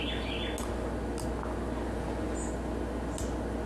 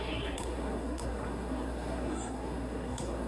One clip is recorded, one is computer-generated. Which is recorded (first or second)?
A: first